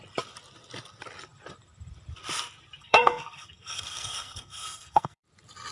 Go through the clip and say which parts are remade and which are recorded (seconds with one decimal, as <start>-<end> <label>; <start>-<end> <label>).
0.0-2.8 recorded; 2.8-5.2 remade; 5.2-5.7 recorded